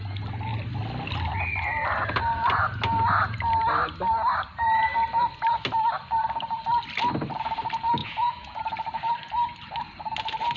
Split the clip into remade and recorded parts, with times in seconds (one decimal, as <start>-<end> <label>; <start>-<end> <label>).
0.0-8.0 recorded; 8.0-8.6 remade; 8.6-10.6 recorded